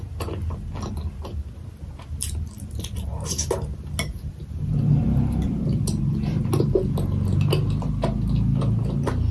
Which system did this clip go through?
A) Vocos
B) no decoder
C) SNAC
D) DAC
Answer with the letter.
B